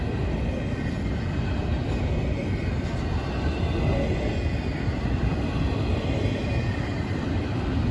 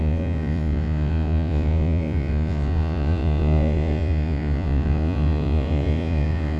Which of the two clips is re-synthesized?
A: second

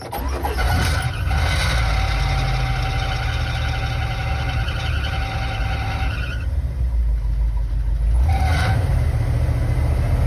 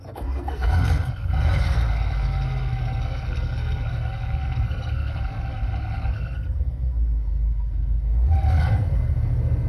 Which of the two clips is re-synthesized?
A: second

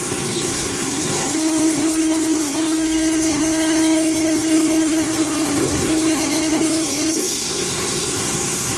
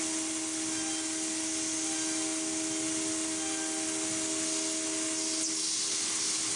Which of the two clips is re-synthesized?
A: first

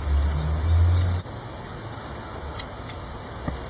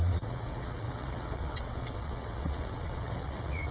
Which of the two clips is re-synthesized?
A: second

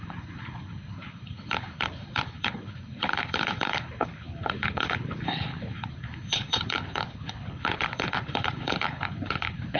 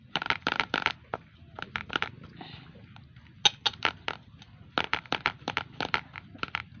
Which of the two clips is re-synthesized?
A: first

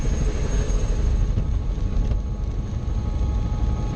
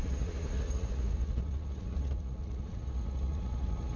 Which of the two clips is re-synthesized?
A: second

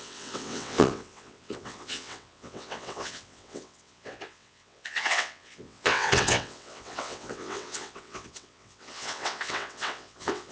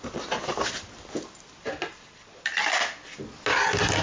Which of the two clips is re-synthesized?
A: first